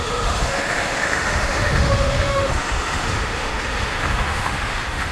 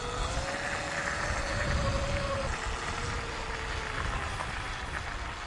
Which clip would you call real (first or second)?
second